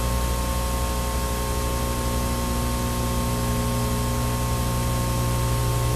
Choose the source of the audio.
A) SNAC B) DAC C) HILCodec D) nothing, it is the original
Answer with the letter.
D